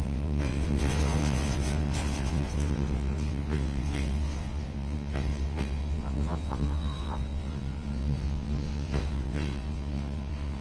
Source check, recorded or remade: remade